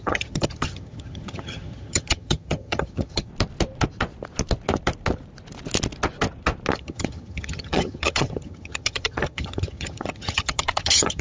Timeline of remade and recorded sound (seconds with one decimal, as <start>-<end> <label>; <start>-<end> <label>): 0.0-3.3 remade; 3.3-6.8 recorded; 6.8-11.2 remade